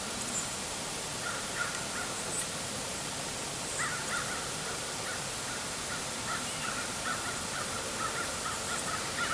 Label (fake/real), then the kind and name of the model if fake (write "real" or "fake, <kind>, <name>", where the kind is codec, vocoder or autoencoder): real